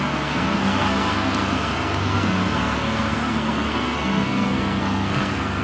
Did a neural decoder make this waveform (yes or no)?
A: yes